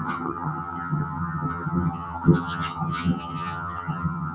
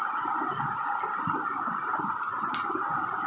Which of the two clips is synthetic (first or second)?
first